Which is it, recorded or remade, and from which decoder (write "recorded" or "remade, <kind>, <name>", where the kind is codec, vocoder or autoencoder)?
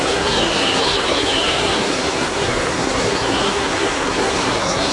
remade, codec, SNAC